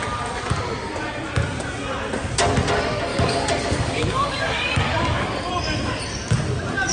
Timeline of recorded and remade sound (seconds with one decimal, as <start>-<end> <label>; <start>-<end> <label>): 0.0-3.1 recorded; 3.1-5.5 remade; 5.5-6.9 recorded